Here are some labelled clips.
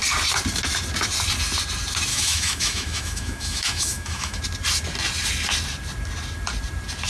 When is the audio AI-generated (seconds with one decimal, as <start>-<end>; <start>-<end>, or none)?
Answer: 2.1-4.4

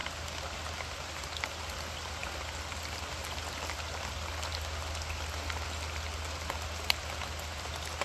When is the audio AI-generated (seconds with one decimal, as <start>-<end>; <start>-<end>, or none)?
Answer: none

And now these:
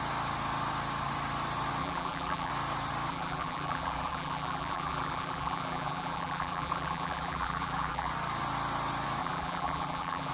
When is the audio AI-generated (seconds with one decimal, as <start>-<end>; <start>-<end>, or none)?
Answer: 1.8-2.5; 3.1-8.1; 9.2-10.3

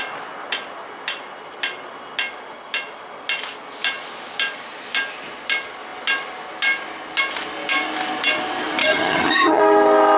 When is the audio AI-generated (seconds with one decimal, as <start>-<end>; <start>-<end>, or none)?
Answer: 8.8-9.6

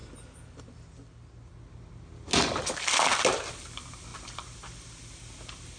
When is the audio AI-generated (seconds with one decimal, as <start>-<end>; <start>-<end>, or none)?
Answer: none